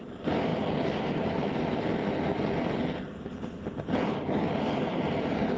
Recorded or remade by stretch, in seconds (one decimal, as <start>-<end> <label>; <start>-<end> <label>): 0.0-5.6 recorded